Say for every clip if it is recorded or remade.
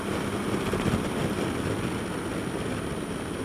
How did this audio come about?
recorded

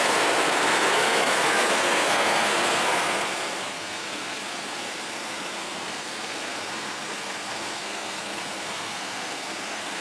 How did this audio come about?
remade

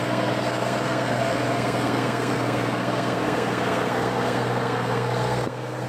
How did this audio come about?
remade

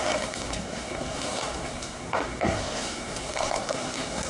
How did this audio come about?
remade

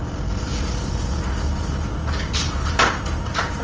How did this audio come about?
recorded